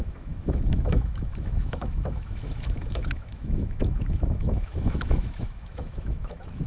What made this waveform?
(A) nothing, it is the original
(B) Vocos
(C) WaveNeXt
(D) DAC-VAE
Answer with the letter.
D